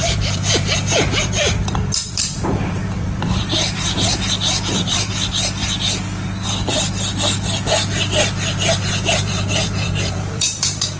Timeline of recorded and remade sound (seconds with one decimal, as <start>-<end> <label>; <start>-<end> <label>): 0.0-5.6 remade; 5.6-9.2 recorded; 9.2-11.0 remade